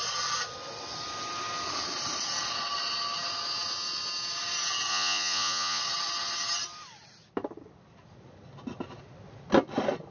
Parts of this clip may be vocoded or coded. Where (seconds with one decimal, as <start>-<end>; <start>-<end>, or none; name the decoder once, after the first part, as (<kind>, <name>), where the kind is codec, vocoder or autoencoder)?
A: 4.9-5.8 (vocoder, Vocos)